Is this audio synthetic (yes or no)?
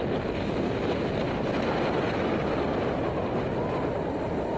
no